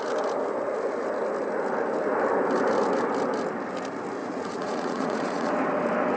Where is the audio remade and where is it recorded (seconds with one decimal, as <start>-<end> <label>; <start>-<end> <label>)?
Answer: 0.0-4.2 recorded; 4.2-5.5 remade; 5.5-6.2 recorded